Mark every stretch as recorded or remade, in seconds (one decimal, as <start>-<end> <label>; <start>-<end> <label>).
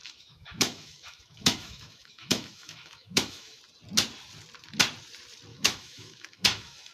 0.0-3.6 remade; 3.6-5.5 recorded; 5.5-6.9 remade